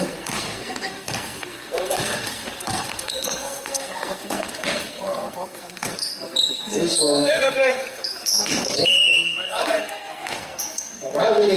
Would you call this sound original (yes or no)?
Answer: no